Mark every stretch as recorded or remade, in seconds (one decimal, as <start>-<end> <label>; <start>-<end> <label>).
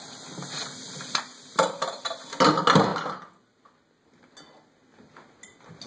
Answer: 0.0-5.9 recorded